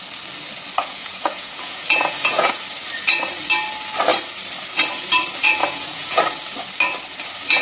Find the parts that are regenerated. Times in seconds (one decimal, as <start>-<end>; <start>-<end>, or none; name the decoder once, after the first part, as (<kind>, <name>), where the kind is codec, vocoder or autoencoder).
0.8-2.5 (vocoder, Vocos); 5.6-6.2